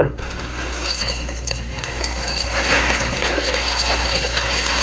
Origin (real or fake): fake